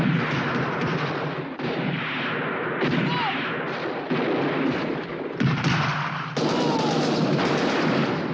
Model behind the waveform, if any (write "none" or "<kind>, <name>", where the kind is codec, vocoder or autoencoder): none